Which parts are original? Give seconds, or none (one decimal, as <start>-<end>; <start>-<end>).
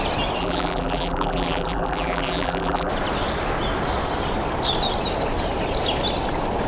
0.0-0.4; 2.9-6.7